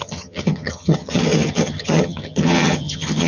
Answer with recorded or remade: remade